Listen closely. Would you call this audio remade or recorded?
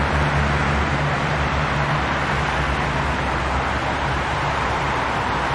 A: remade